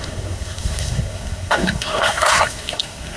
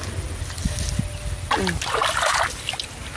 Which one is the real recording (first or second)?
second